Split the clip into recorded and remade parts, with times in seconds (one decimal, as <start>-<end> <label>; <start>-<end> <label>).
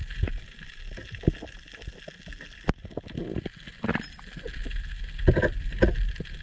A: 0.0-6.4 recorded